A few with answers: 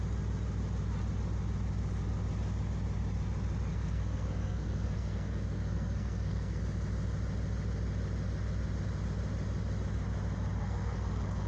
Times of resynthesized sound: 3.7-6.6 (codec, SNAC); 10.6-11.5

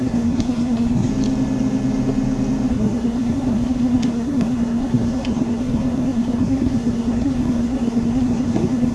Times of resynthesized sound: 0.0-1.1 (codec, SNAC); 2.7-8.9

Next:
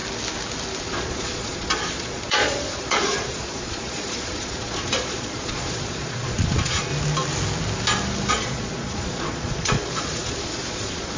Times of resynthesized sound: 0.8-6.9 (vocoder, Vocos); 8.3-11.2